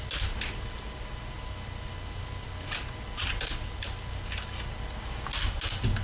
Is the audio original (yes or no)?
yes